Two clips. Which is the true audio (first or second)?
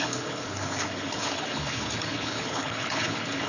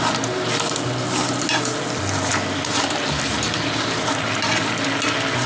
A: second